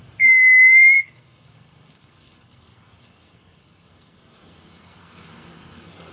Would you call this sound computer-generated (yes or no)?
yes